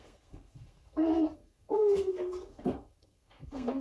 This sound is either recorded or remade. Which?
remade